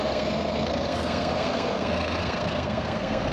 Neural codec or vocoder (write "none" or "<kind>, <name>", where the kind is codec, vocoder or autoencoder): codec, SNAC